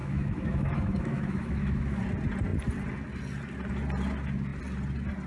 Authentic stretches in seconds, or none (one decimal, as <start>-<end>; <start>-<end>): 2.0-5.3